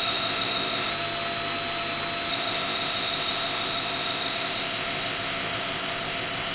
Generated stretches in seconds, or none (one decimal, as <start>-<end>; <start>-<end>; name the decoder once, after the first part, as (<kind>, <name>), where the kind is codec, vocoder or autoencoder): 0.0-0.9 (codec, ZipCodec); 2.3-6.5